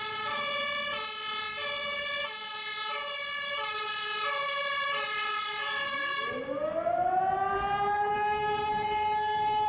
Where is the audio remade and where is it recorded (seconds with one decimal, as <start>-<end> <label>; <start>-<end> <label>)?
0.0-8.1 recorded; 8.1-9.7 remade